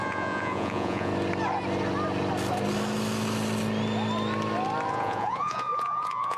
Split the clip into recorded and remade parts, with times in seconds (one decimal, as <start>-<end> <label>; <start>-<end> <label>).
0.0-1.1 remade; 1.1-4.9 recorded; 4.9-6.4 remade